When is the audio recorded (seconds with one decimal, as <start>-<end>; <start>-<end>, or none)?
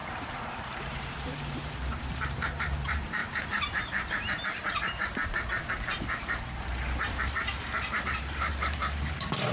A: none